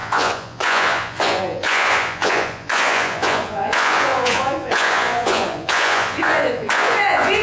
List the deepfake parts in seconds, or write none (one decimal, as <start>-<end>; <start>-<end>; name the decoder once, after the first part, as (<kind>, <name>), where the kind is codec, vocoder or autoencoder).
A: 0.0-7.4 (vocoder, Vocos)